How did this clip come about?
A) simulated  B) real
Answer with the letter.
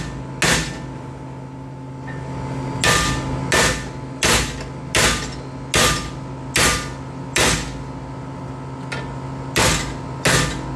B